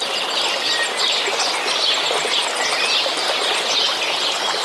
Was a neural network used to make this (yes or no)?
no